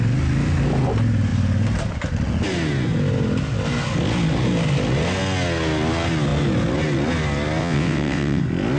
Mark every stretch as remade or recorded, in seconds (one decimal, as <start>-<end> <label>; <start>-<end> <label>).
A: 0.0-7.6 recorded; 7.6-8.4 remade; 8.4-8.8 recorded